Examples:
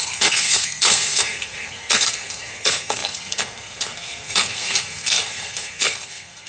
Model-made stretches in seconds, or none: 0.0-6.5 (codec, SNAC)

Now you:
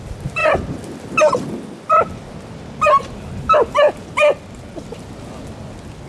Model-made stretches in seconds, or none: none

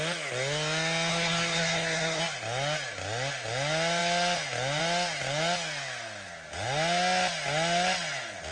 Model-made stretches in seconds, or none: 1.1-2.2 (codec, SNAC)

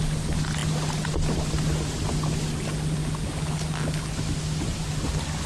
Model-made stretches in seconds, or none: none